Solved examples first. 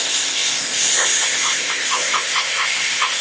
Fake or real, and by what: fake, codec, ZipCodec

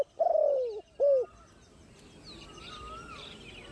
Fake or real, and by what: real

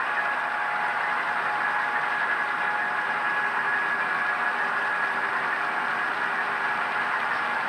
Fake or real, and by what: real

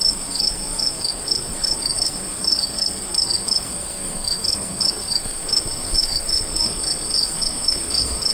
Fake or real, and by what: fake, codec, SNAC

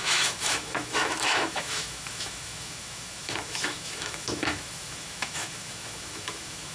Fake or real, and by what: fake, autoencoder, DAC-VAE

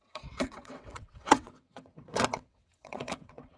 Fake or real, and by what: fake, vocoder, WaveNeXt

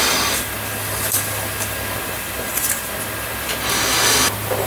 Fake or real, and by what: real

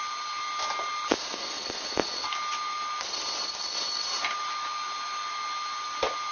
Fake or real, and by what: real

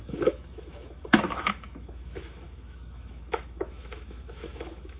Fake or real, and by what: fake, autoencoder, DAC-VAE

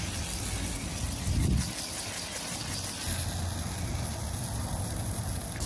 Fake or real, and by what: real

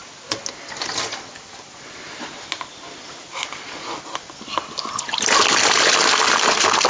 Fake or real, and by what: real